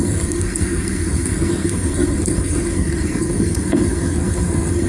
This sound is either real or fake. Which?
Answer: fake